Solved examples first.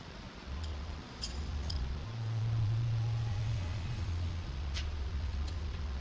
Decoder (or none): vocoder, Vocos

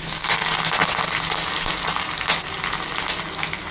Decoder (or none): none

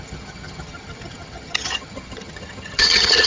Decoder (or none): vocoder, HiFi-GAN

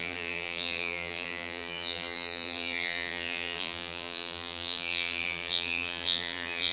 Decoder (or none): vocoder, BigVGAN v2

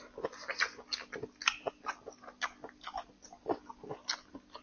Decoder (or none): none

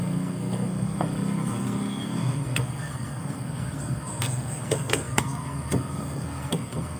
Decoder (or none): codec, SNAC